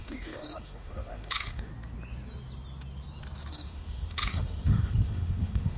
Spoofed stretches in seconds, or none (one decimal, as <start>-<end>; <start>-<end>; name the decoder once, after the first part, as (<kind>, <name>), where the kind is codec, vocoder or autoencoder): 0.0-1.7 (autoencoder, DAC-VAE); 3.5-5.8